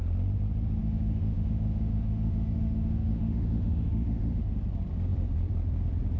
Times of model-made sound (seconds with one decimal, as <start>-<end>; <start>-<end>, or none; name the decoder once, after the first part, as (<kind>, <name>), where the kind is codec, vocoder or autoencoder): 0.8-4.4 (autoencoder, DAC-VAE)